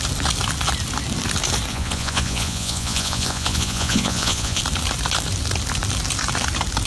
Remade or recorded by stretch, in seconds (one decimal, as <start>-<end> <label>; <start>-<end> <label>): 0.0-1.7 recorded; 1.7-4.6 remade; 4.6-6.9 recorded